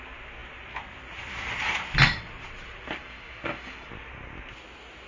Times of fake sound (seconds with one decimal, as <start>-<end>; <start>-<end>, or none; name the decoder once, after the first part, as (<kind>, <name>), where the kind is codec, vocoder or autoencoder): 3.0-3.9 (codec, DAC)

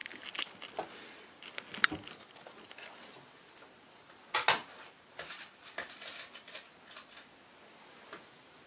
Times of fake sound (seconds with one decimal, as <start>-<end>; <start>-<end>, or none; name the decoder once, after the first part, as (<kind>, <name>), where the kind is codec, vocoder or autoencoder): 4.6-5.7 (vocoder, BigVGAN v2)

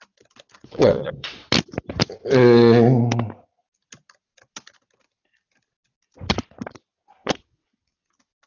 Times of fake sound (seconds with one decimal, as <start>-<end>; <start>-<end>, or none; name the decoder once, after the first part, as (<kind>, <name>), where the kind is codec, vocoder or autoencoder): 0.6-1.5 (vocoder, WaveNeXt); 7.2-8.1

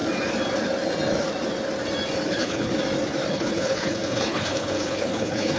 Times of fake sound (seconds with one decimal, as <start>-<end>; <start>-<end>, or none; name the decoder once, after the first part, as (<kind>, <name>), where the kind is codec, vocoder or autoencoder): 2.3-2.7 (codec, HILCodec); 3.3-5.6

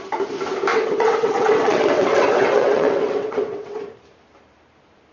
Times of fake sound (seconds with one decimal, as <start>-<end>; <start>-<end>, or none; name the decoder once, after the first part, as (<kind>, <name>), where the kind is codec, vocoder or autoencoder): 0.7-3.8 (vocoder, WaveNeXt)